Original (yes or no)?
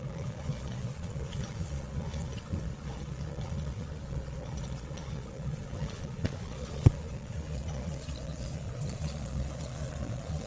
no